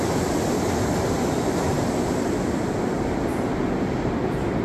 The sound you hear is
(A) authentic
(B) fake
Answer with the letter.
A